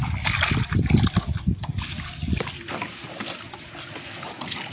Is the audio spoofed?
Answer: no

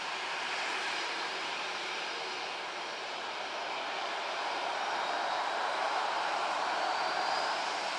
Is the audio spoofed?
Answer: yes